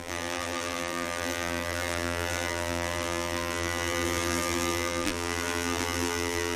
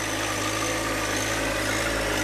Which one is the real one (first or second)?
second